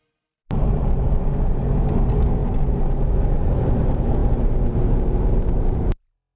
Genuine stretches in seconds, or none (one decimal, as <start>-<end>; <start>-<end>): none